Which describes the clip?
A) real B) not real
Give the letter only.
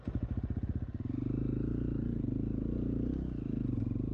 A